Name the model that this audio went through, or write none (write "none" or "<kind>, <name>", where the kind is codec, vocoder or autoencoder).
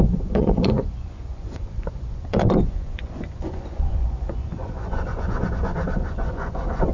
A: vocoder, Vocos